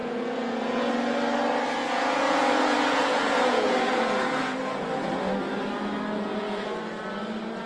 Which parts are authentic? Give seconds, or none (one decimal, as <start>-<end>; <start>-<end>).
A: 0.9-1.8; 5.3-6.3; 7.0-7.7